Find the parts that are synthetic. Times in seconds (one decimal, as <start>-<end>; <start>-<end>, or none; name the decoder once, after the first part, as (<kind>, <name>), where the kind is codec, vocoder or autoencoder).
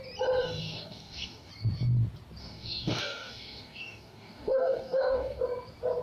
0.4-1.5 (codec, DAC); 2.4-5.4